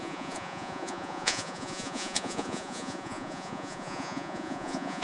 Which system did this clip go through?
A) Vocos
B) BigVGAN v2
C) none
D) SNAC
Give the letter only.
A